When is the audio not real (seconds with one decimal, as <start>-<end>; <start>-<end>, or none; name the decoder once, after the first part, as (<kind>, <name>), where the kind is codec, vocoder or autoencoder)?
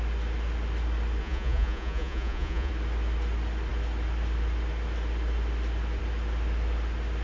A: 1.2-2.7 (vocoder, Vocos)